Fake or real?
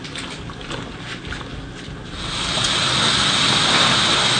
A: real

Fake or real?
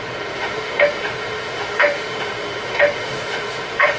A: fake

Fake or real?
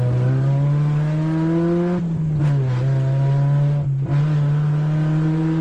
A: real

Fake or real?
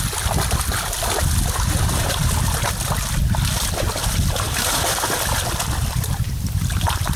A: real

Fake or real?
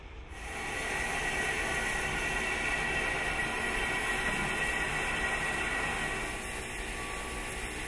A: real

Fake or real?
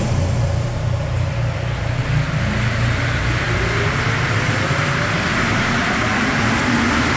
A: real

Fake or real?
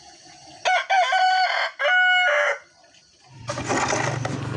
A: real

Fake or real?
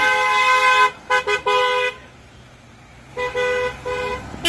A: real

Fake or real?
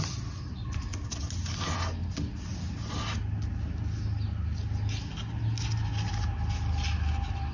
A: real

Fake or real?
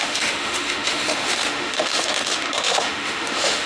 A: fake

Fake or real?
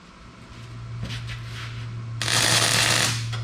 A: real